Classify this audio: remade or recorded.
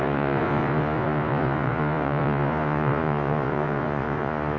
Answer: remade